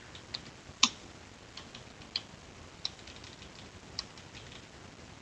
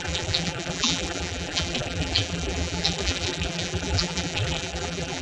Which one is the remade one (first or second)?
second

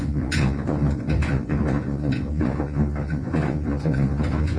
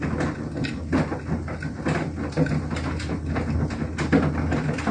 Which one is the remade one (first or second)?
first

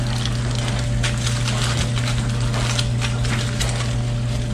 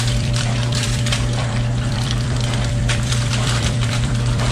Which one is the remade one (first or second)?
second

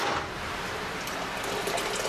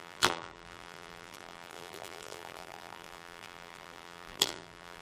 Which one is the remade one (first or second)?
second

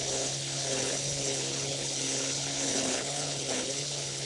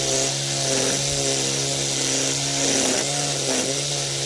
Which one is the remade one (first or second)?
first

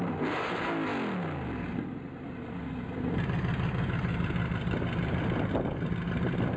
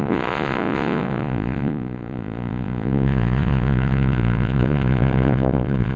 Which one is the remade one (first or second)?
second